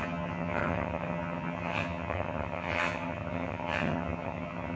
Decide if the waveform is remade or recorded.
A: remade